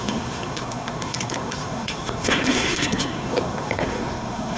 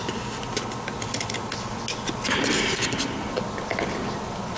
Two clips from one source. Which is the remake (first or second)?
first